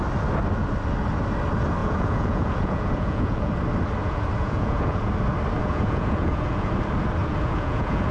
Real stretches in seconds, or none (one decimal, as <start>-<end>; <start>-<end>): 0.0-1.8; 3.5-4.0; 5.1-5.6; 6.7-7.2